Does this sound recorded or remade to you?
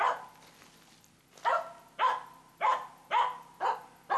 recorded